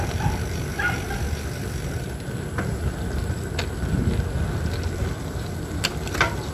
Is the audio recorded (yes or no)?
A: yes